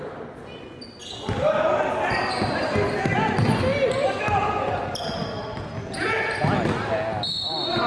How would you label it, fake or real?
real